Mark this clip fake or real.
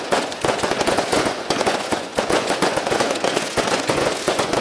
fake